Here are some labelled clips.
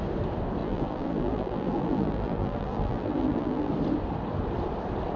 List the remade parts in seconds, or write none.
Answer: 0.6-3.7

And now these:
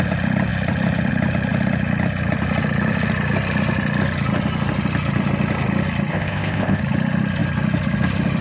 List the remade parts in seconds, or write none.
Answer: 6.1-6.8

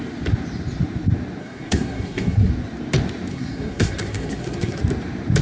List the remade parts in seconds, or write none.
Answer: 1.4-2.5; 3.3-4.8

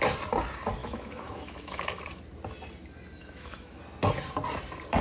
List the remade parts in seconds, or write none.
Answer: 0.8-1.8; 3.2-3.8

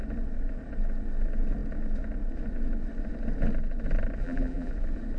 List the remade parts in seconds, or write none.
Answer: 4.2-4.7